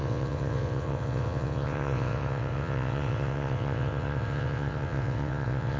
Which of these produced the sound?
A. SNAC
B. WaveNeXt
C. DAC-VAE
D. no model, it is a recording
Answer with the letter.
B